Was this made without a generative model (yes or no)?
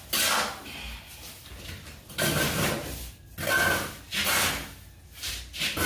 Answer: yes